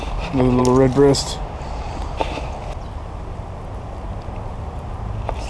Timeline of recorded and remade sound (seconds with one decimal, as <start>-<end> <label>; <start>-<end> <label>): 0.0-5.5 recorded